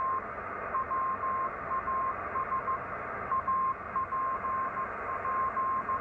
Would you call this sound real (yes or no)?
yes